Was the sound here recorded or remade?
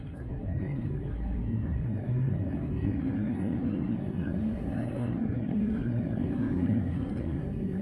remade